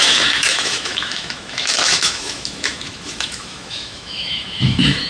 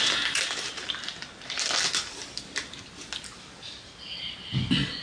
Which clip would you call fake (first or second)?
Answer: first